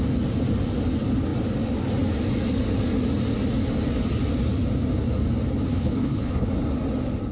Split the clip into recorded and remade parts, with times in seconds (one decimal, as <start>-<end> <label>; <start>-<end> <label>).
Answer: 0.0-5.7 recorded; 5.7-6.5 remade; 6.5-7.3 recorded